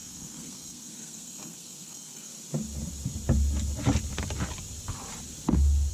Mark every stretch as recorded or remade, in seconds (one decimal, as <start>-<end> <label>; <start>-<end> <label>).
0.0-2.3 remade; 2.3-5.9 recorded